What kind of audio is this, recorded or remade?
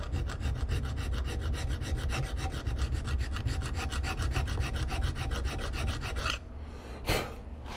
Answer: recorded